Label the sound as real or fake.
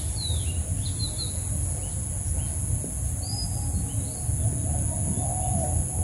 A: real